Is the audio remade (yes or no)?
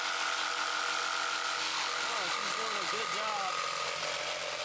no